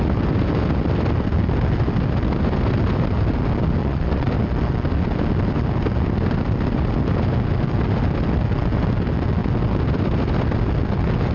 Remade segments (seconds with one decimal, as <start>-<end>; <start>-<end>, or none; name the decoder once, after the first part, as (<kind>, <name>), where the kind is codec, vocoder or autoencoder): 3.8-4.3 (vocoder, Vocos)